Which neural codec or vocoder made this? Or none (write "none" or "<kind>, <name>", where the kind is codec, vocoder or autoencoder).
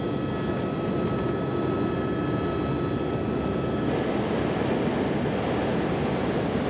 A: none